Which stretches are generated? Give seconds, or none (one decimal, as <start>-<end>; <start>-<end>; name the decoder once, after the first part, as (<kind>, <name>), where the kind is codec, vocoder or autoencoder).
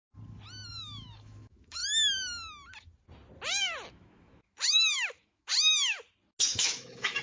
0.7-1.8 (autoencoder, DAC-VAE); 3.9-5.5; 6.4-7.2